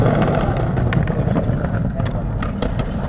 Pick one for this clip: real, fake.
real